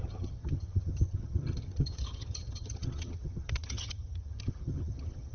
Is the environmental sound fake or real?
fake